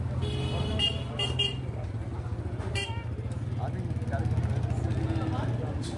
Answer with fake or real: real